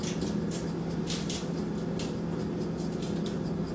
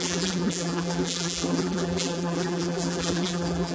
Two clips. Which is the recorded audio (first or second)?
first